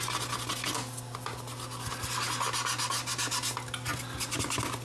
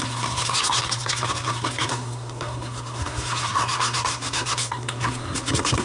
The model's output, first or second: second